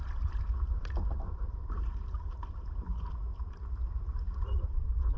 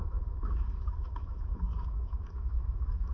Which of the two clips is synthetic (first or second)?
second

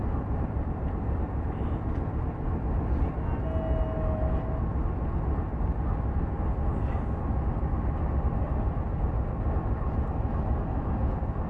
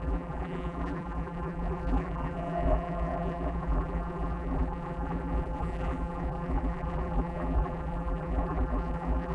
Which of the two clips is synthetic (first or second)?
second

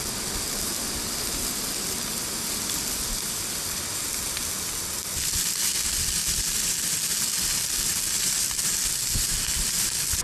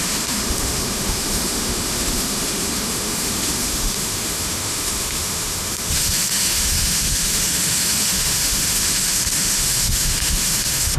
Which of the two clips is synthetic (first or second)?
second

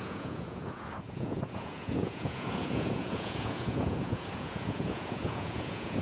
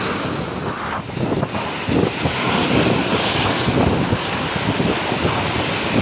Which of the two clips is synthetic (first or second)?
first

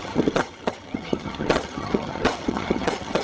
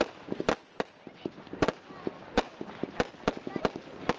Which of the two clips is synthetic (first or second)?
first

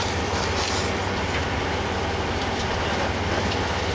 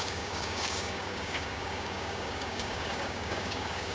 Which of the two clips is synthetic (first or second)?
second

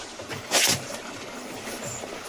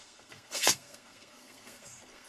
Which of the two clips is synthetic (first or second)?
second